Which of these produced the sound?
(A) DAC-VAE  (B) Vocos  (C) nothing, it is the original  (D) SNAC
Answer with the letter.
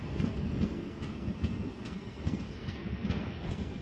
D